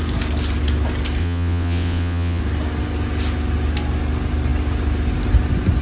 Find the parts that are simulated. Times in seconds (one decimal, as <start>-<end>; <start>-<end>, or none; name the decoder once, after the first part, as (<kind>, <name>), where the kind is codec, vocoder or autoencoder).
1.2-2.4 (vocoder, WaveNeXt)